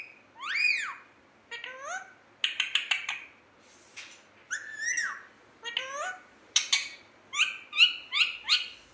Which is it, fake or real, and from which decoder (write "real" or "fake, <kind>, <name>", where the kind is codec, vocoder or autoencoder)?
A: real